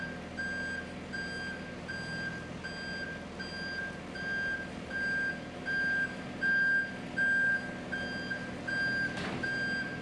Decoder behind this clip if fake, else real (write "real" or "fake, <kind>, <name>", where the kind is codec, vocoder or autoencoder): real